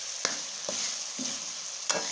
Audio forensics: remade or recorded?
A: recorded